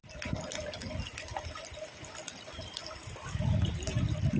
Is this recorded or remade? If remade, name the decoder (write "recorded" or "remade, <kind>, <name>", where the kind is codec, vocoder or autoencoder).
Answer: recorded